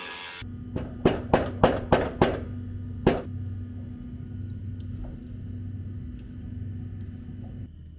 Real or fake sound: real